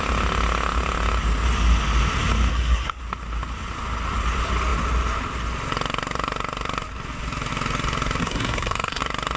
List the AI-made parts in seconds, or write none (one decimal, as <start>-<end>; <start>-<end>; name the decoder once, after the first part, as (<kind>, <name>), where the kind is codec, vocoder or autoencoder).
2.5-3.0 (codec, SNAC); 8.2-9.0

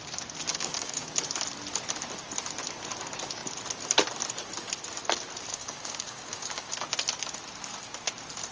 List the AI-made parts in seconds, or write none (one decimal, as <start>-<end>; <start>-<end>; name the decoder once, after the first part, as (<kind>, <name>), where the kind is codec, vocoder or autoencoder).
0.5-1.1 (codec, DAC); 5.5-6.7

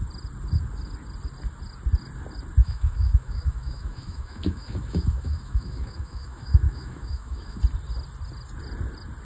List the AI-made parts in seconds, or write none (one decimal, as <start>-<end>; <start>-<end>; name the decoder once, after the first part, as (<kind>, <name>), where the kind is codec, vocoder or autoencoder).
2.6-7.6 (autoencoder, DAC-VAE)

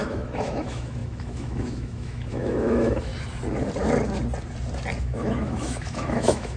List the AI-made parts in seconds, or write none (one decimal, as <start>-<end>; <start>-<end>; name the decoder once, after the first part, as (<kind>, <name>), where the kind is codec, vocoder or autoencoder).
0.0-3.1 (autoencoder, DAC-VAE); 5.0-6.6

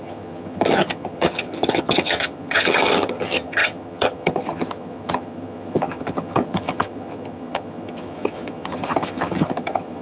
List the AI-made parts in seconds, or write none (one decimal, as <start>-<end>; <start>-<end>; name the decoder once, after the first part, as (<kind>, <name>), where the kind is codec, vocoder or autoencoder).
0.0-10.0 (vocoder, HiFi-GAN)

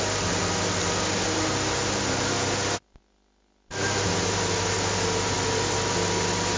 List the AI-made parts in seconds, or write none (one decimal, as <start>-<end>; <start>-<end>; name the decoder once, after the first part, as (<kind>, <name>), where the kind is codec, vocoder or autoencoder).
none

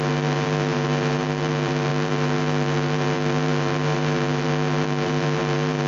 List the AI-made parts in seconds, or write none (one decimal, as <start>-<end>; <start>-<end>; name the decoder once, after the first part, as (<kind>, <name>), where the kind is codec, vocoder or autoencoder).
0.0-5.9 (vocoder, BigVGAN v2)

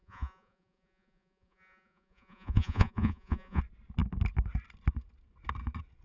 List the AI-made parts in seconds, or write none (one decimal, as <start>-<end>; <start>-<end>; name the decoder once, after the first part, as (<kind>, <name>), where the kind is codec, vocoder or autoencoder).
0.0-3.6 (vocoder, Vocos)